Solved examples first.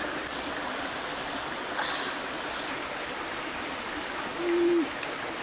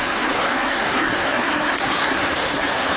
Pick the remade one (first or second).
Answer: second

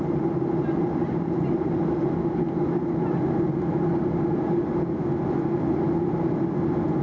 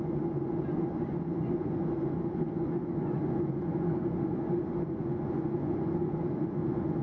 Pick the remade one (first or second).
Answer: second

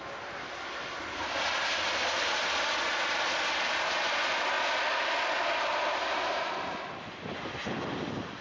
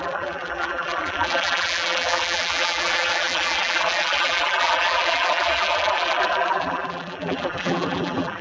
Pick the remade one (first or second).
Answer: second